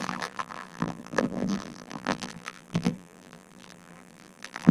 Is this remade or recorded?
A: remade